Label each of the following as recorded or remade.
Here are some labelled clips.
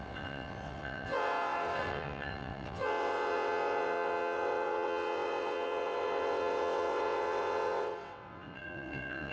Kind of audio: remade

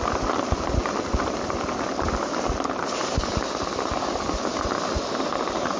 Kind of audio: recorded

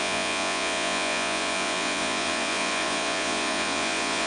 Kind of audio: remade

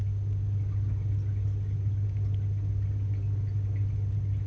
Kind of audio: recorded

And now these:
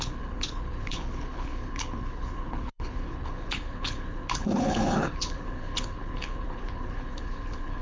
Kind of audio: remade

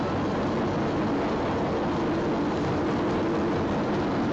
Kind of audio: recorded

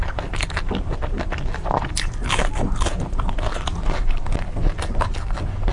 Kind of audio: recorded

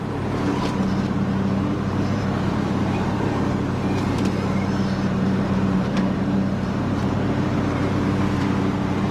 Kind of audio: remade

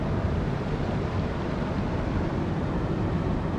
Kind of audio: recorded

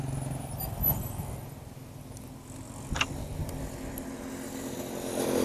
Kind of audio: recorded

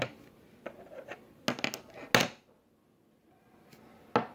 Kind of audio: recorded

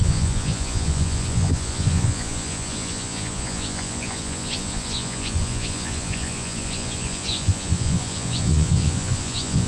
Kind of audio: remade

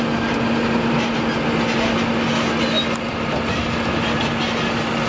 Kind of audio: recorded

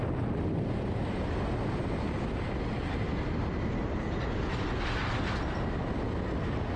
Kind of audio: recorded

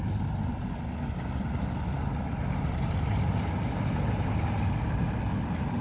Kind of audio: recorded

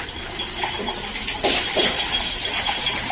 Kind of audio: recorded